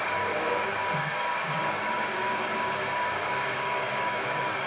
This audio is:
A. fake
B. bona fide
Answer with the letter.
A